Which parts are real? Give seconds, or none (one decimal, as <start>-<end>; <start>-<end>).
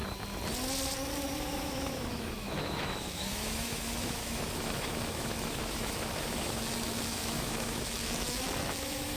0.0-1.4